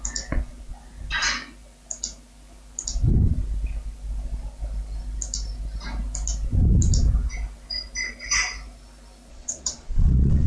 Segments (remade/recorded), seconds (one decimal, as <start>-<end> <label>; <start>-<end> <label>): 0.0-9.3 recorded; 9.3-10.5 remade